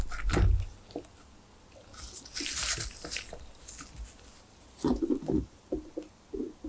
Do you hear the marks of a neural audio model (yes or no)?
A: no